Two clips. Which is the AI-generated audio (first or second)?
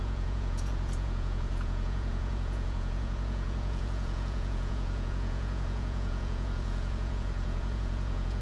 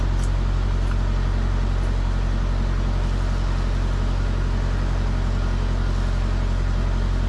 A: first